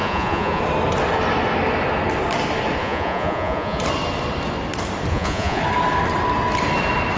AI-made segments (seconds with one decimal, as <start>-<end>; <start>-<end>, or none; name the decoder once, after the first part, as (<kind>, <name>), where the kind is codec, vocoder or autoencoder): 0.0-0.6 (vocoder, Vocos); 2.8-3.8; 5.1-5.6